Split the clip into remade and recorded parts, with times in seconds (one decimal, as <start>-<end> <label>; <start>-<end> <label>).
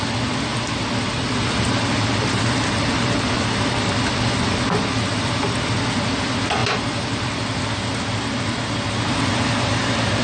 0.0-0.5 recorded; 0.5-4.3 remade; 4.3-6.6 recorded; 6.6-7.6 remade; 7.6-10.2 recorded